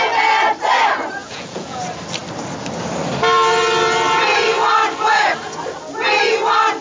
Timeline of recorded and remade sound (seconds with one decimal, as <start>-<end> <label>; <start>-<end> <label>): 0.0-1.2 recorded; 1.2-1.8 remade; 1.8-6.8 recorded